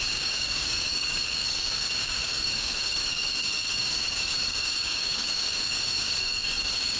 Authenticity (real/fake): fake